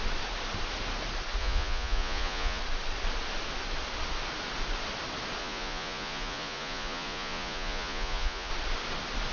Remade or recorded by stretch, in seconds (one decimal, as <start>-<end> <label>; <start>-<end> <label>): 0.0-1.4 recorded; 1.4-2.6 remade; 2.6-5.4 recorded; 5.4-8.5 remade; 8.5-9.3 recorded

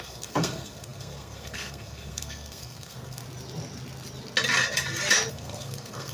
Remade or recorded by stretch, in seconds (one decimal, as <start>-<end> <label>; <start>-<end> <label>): 0.0-3.2 remade; 3.2-5.3 recorded; 5.3-6.1 remade

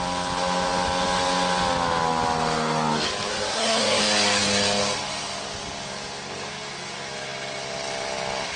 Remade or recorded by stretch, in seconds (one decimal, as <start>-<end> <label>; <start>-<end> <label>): 0.0-3.3 recorded; 3.3-4.0 remade; 4.0-8.6 recorded

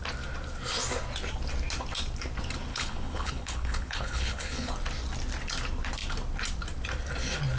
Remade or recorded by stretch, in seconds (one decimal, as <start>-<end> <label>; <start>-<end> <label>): 0.0-2.7 recorded; 2.7-4.7 remade; 4.7-7.6 recorded